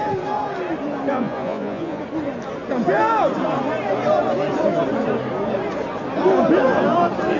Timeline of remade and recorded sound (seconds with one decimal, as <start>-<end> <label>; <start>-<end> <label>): 0.0-1.1 recorded; 1.1-2.0 remade; 2.0-7.4 recorded